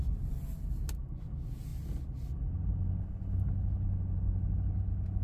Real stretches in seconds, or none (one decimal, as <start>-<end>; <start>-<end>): 0.0-5.2